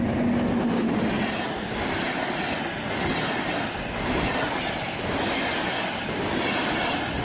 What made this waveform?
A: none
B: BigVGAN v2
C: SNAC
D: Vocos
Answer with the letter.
A